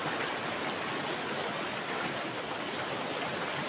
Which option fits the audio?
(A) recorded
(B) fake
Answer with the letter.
A